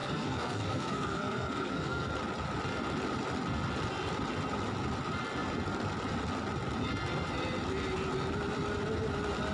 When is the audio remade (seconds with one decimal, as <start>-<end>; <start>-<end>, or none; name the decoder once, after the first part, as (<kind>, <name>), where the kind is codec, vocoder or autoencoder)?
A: 0.0-2.1 (codec, SNAC)